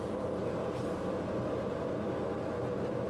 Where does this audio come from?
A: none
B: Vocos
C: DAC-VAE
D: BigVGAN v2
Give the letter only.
A